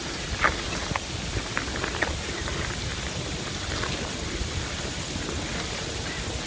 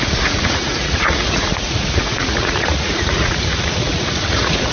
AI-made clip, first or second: second